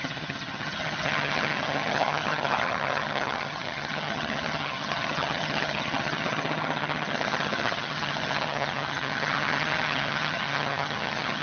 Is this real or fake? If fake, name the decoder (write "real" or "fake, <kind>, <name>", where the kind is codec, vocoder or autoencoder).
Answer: fake, vocoder, HiFi-GAN